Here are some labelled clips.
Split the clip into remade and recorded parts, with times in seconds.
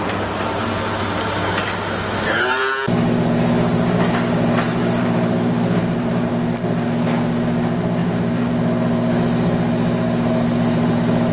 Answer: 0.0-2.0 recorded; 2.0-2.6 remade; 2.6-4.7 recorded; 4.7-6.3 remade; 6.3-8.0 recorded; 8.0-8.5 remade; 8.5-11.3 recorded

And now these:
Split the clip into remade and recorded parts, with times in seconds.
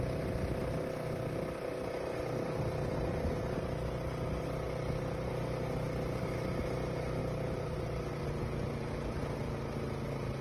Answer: 0.0-7.2 recorded; 7.2-8.4 remade; 8.4-10.4 recorded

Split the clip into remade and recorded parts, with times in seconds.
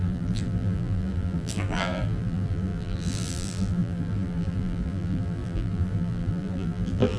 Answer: 0.0-7.2 remade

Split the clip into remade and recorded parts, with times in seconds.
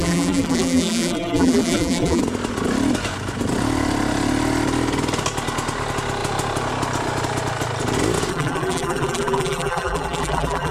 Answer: 0.0-2.2 remade; 2.2-8.3 recorded; 8.3-10.7 remade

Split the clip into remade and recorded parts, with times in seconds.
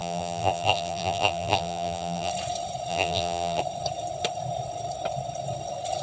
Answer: 0.0-2.3 remade; 2.3-2.9 recorded; 2.9-3.6 remade; 3.6-6.0 recorded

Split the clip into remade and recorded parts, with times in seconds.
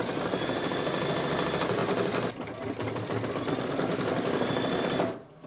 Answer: 0.0-1.8 recorded; 1.8-4.8 remade; 4.8-5.5 recorded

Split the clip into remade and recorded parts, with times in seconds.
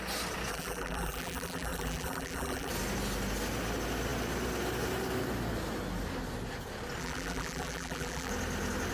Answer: 0.0-0.5 recorded; 0.5-2.7 remade; 2.7-7.0 recorded; 7.0-8.3 remade; 8.3-8.9 recorded